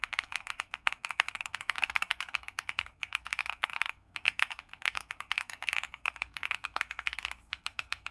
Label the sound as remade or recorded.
remade